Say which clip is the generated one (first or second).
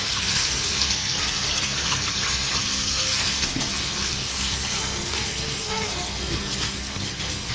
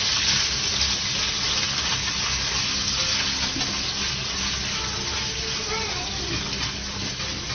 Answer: first